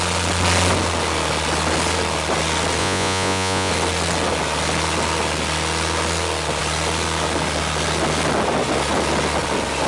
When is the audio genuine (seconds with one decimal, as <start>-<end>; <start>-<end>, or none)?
0.0-2.8; 3.7-9.9